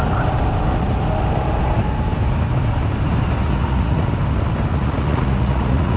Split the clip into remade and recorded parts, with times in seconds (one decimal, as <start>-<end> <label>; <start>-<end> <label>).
0.0-3.4 recorded; 3.4-4.1 remade; 4.1-4.7 recorded; 4.7-6.0 remade